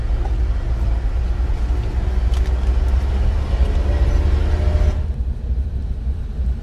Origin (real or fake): real